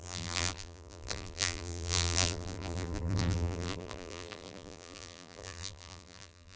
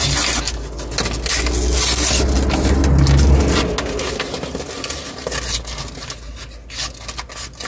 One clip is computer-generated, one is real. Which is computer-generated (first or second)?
first